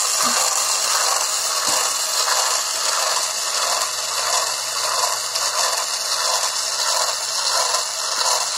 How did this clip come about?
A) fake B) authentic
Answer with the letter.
B